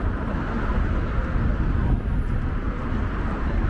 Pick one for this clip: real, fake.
real